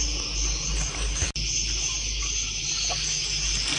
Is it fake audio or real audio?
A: real